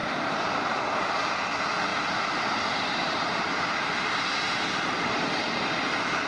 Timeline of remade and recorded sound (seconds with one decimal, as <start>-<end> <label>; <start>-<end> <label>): 0.0-0.9 remade; 0.9-1.9 recorded; 1.9-5.7 remade; 5.7-6.3 recorded